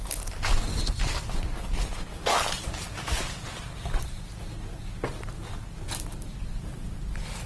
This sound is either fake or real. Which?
real